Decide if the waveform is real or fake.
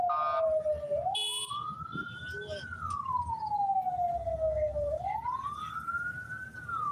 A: real